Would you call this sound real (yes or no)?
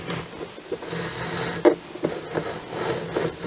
yes